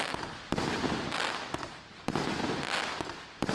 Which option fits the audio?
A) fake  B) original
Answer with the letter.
B